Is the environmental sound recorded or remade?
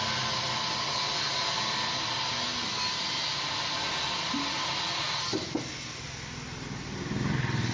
recorded